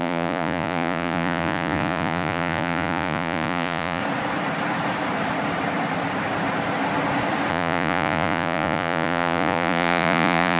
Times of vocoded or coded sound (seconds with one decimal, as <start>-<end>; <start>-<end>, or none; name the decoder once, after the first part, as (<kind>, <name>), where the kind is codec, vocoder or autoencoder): 0.0-4.0 (vocoder, Vocos); 7.5-10.6